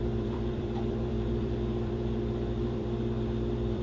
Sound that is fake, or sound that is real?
fake